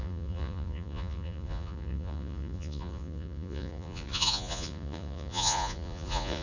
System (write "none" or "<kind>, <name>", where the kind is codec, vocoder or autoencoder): vocoder, Vocos